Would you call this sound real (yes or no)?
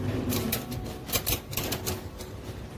yes